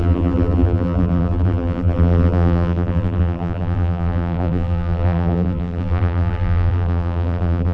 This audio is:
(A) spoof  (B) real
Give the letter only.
A